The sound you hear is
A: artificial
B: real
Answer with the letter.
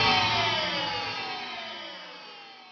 B